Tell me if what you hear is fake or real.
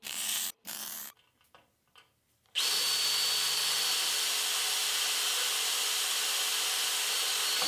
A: real